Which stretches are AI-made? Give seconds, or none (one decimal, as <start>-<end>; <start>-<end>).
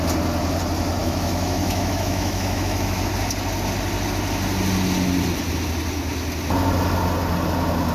1.0-3.1